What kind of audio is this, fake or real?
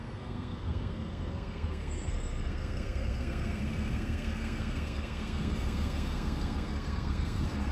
fake